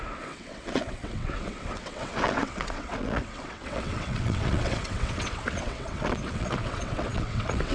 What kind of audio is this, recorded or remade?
remade